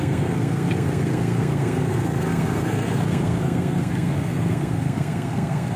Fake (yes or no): yes